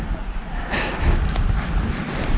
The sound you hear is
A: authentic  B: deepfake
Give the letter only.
A